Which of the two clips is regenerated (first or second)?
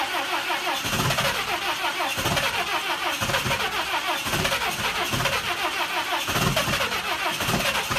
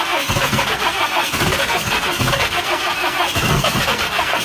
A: second